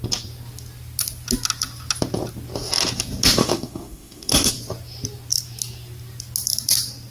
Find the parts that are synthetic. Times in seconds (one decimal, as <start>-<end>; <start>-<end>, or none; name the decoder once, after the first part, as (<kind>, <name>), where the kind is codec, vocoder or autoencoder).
3.4-4.5 (autoencoder, DAC-VAE)